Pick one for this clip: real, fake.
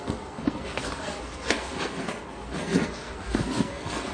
fake